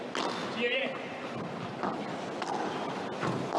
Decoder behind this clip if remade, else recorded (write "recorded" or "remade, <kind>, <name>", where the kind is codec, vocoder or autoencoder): recorded